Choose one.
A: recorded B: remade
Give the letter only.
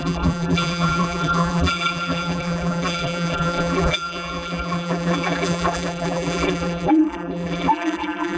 B